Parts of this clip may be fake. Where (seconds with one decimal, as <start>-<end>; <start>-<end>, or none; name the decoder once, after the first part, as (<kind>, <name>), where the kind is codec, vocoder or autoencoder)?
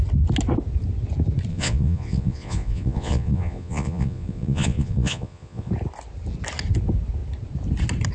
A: 1.5-5.7 (vocoder, Vocos)